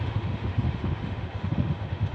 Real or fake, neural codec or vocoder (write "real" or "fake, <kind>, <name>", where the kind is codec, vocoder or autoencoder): fake, autoencoder, DAC-VAE